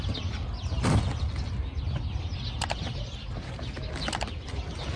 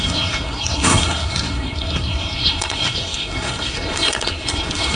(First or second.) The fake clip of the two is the second